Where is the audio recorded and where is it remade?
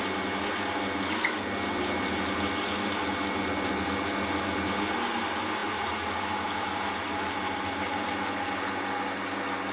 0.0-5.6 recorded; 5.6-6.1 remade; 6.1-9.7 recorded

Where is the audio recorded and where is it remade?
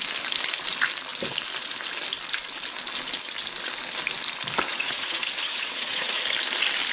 0.0-4.7 recorded; 4.7-6.2 remade; 6.2-6.9 recorded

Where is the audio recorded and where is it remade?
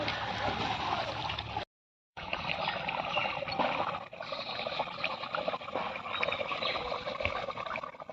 0.0-1.9 recorded; 1.9-2.4 remade; 2.4-8.1 recorded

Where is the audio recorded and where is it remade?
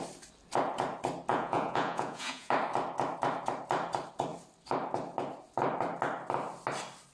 0.0-1.3 recorded; 1.3-2.5 remade; 2.5-7.1 recorded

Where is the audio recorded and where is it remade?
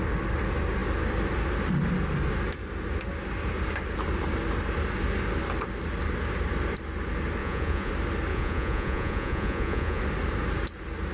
0.0-7.4 recorded; 7.4-7.9 remade; 7.9-8.3 recorded; 8.3-10.0 remade; 10.0-11.1 recorded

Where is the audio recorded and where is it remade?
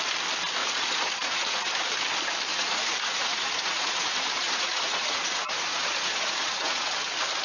0.0-0.6 recorded; 0.6-1.7 remade; 1.7-2.5 recorded; 2.5-6.9 remade; 6.9-7.4 recorded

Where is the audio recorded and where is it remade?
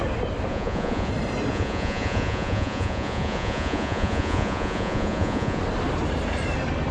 0.0-0.5 recorded; 0.5-1.1 remade; 1.1-1.5 recorded; 1.5-5.6 remade; 5.6-6.9 recorded